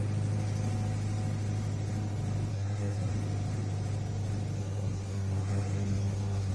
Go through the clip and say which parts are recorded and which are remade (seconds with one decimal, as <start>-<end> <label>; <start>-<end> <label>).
0.0-2.5 recorded; 2.5-3.1 remade; 3.1-4.6 recorded; 4.6-6.5 remade